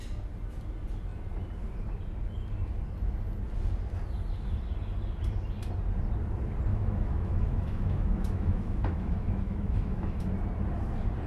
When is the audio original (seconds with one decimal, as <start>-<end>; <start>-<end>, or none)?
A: 0.0-6.7; 10.2-11.3